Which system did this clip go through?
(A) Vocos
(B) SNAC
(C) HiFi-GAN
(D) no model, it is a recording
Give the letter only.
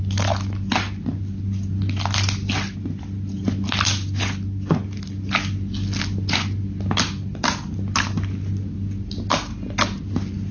D